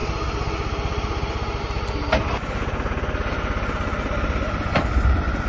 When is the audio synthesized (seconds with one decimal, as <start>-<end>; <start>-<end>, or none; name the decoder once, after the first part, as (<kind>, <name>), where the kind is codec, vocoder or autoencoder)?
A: none